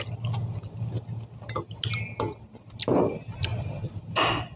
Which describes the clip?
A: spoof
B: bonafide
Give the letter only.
B